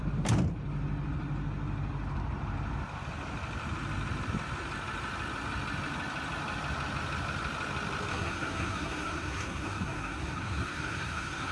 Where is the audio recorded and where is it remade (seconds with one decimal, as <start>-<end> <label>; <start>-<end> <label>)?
0.0-8.1 recorded; 8.1-11.5 remade